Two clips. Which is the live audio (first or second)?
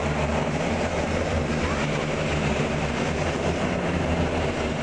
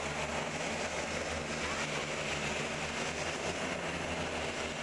second